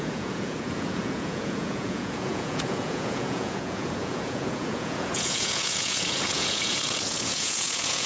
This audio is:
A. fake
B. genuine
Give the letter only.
A